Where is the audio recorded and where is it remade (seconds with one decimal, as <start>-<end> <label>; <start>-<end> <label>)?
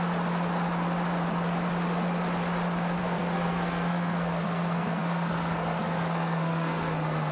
0.0-3.0 recorded; 3.0-7.3 remade